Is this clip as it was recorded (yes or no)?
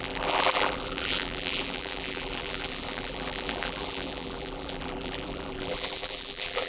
no